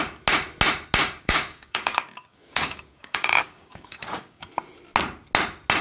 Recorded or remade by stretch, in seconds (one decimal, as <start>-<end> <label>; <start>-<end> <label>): 0.0-1.0 recorded; 1.0-4.5 remade; 4.5-5.8 recorded

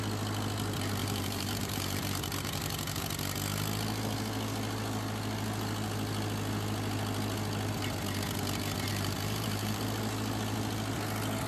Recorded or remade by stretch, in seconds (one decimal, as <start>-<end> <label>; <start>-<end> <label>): 0.0-1.0 recorded; 1.0-3.0 remade; 3.0-8.9 recorded; 8.9-9.8 remade; 9.8-11.5 recorded

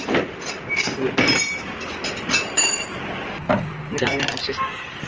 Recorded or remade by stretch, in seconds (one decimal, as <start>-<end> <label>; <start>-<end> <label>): 0.0-5.1 recorded

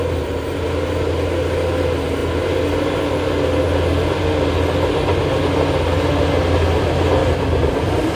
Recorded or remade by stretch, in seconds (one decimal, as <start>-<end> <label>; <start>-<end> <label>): 0.0-7.2 recorded; 7.2-8.2 remade

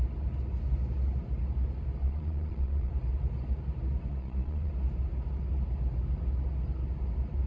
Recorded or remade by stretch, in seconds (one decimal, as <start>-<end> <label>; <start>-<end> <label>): 0.0-2.0 recorded; 2.0-2.9 remade; 2.9-4.1 recorded; 4.1-4.7 remade; 4.7-7.5 recorded

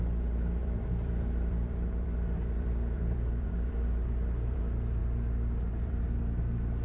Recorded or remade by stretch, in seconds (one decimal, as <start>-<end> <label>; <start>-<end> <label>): 0.0-0.6 recorded; 0.6-4.6 remade; 4.6-5.0 recorded; 5.0-6.2 remade; 6.2-6.8 recorded

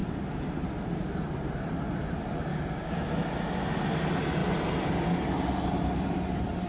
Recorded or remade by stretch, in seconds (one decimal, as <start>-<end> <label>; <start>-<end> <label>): 0.0-2.5 recorded; 2.5-3.1 remade; 3.1-6.7 recorded

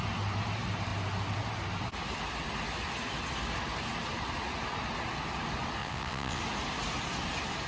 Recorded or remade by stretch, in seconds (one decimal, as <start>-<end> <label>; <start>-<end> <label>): 0.0-5.8 recorded; 5.8-6.4 remade; 6.4-7.7 recorded